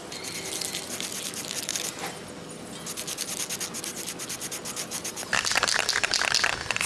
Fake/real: real